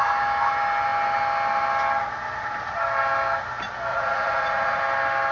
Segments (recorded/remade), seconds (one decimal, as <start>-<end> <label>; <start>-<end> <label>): 0.0-3.9 recorded; 3.9-4.8 remade; 4.8-5.3 recorded